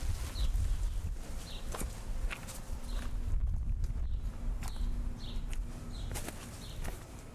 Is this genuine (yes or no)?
yes